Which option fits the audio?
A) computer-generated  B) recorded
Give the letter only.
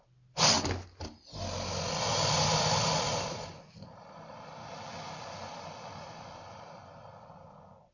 B